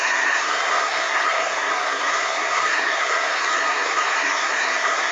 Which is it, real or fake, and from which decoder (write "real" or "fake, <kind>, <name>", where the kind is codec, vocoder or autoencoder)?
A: fake, codec, SNAC